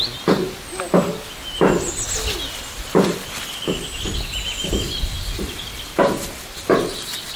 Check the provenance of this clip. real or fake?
real